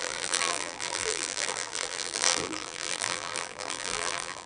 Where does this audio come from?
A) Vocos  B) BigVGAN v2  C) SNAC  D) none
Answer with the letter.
B